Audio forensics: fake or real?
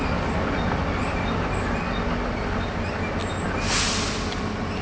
real